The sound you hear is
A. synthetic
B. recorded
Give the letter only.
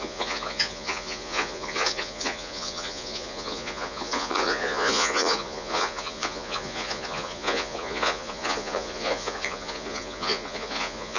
A